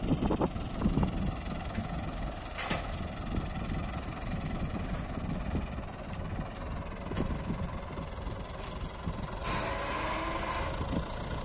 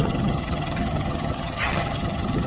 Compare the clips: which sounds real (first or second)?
first